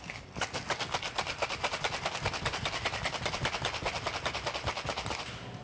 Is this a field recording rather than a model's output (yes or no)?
yes